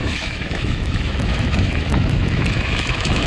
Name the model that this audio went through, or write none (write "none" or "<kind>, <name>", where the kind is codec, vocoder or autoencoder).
autoencoder, DAC-VAE